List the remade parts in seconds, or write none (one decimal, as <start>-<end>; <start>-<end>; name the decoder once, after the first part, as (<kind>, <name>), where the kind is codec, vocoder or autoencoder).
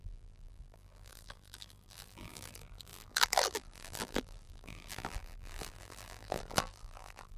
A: 0.0-7.4 (vocoder, BigVGAN v2)